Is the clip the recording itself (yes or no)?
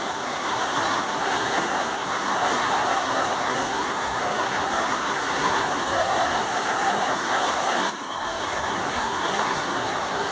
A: no